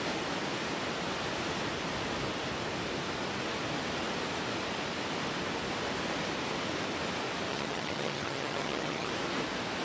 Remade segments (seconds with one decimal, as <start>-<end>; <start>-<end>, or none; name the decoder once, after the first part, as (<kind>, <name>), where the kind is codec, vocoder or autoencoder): 7.5-9.1 (vocoder, HiFi-GAN)